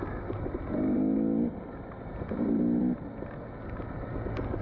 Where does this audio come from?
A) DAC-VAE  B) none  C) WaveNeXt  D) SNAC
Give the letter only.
B